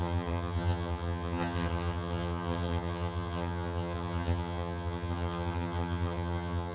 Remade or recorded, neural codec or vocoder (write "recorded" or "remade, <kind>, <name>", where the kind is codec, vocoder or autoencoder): remade, vocoder, HiFi-GAN